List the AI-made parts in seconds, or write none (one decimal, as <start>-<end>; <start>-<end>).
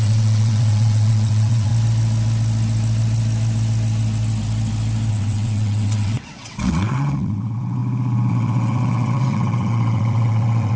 0.0-1.7; 5.1-7.8; 8.3-10.8